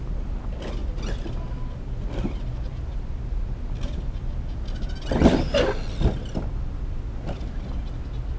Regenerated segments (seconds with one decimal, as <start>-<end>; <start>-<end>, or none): none